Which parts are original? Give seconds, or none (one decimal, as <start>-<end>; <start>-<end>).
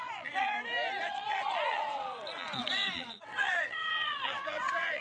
0.5-1.0